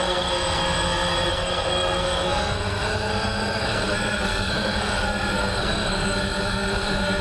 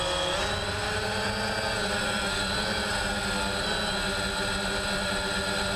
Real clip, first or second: second